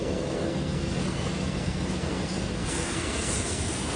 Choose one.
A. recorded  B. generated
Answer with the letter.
B